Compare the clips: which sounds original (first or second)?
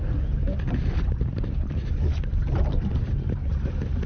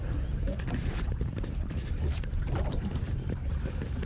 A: first